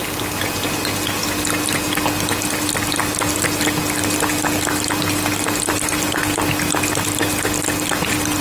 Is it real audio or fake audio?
real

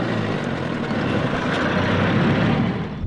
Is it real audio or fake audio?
real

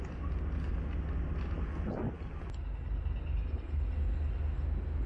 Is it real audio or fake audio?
real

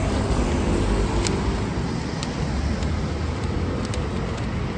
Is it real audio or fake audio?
real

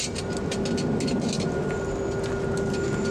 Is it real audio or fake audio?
real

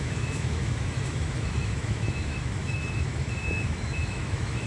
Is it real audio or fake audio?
fake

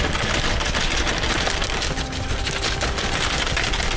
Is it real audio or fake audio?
real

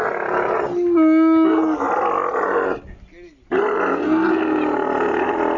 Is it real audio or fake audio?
real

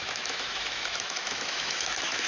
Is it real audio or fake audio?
fake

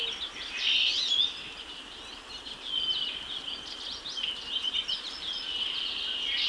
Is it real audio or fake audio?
real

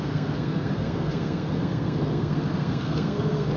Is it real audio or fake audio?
fake